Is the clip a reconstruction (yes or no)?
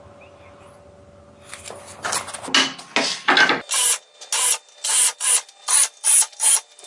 no